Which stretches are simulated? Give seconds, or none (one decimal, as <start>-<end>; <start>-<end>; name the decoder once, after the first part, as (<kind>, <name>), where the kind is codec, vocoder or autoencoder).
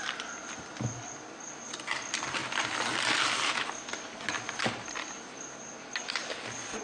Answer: none